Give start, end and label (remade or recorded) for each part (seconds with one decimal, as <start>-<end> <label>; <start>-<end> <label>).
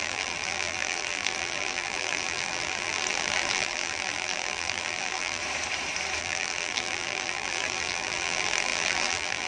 0.0-5.4 remade; 5.4-6.2 recorded; 6.2-9.5 remade